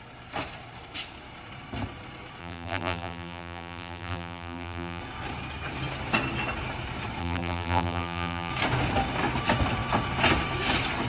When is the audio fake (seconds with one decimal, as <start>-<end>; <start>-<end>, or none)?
2.4-5.0; 7.2-8.5